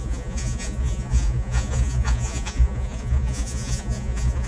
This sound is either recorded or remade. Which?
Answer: remade